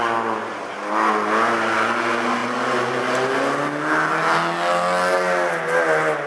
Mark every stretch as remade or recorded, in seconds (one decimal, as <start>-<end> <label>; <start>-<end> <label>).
0.0-6.3 recorded